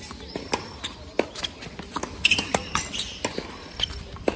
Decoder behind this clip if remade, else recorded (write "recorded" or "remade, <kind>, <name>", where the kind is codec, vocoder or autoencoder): recorded